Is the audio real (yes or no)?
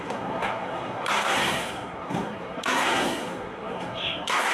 no